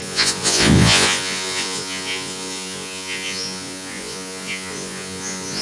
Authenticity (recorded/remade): remade